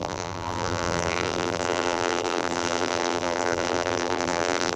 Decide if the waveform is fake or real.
fake